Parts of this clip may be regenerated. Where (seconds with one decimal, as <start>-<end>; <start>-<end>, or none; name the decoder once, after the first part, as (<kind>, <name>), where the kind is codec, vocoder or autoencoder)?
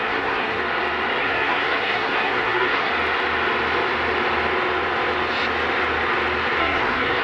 0.0-0.6 (codec, SNAC); 1.2-2.9; 6.6-7.2